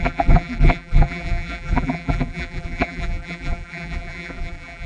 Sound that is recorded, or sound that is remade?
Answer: remade